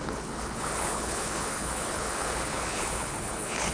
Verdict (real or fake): fake